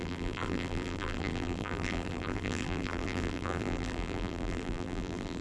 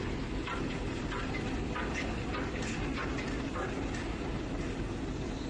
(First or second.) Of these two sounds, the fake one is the first